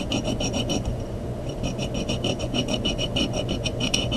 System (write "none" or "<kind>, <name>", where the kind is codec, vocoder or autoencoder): vocoder, Vocos